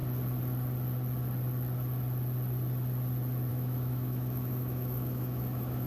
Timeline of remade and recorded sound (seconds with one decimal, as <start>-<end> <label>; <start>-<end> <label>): 0.0-3.5 recorded; 3.5-5.9 remade